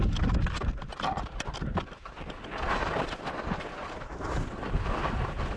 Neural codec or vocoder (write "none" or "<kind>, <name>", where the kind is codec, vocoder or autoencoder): none